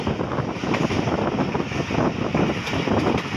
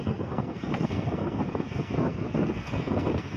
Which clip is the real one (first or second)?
first